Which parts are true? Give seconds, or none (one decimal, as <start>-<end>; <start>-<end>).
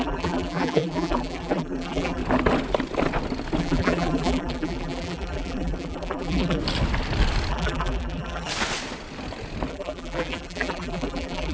2.2-3.6; 6.6-7.5; 8.5-9.7